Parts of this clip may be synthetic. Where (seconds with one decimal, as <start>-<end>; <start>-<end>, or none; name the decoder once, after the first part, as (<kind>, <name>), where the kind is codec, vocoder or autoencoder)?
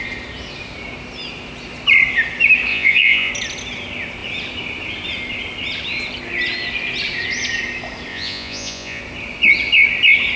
2.7-3.3 (vocoder, Vocos); 8.1-9.0